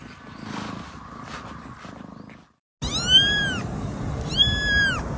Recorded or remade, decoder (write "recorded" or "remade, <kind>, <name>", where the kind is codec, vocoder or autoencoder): recorded